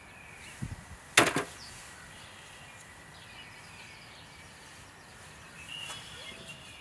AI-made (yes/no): no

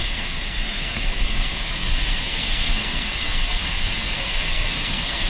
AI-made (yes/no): yes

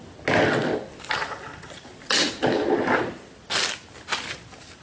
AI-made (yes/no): no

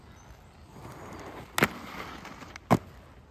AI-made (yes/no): no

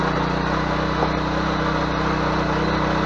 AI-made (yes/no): no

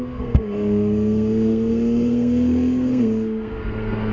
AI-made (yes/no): yes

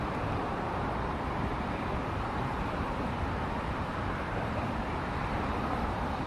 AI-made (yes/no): yes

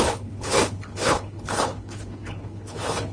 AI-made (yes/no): yes